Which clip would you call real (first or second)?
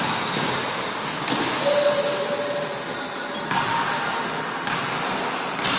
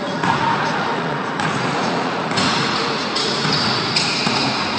first